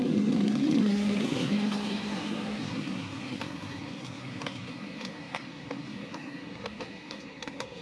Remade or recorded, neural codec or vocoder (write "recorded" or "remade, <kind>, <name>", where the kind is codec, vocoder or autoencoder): remade, codec, SNAC